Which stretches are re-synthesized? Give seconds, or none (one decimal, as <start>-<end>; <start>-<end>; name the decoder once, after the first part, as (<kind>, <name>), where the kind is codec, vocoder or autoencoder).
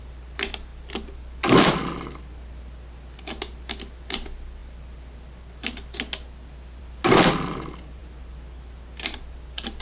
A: none